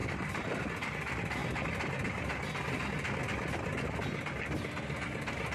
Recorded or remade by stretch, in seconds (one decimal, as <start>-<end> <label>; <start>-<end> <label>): 0.0-0.6 remade; 0.6-5.5 recorded